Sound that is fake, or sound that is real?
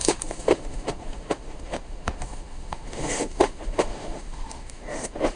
fake